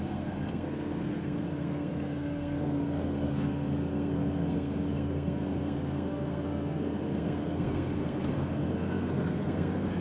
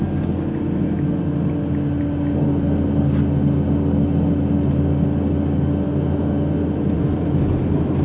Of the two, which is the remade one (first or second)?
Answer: first